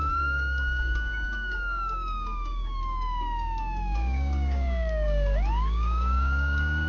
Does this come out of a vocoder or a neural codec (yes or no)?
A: yes